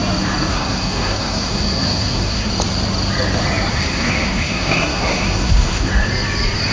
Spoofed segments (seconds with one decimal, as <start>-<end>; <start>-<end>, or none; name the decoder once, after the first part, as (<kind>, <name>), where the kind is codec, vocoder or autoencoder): 0.5-2.5 (codec, SNAC); 3.7-5.9